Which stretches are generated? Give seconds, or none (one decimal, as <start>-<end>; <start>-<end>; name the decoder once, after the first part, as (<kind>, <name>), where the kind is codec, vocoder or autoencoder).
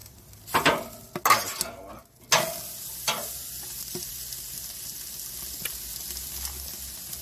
none